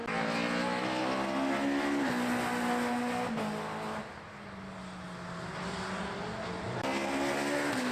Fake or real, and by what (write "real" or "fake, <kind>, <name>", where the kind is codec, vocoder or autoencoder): real